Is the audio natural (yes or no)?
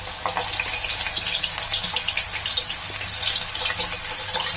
yes